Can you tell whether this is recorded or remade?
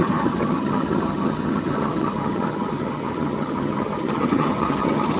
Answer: remade